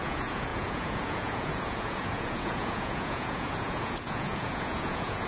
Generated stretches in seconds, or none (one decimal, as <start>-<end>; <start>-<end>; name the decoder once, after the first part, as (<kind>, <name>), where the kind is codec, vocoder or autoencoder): 0.0-5.3 (vocoder, Vocos)